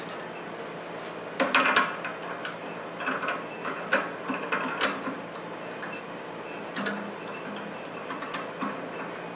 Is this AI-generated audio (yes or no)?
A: no